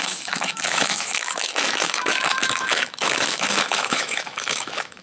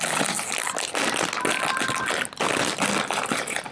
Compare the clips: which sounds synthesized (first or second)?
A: first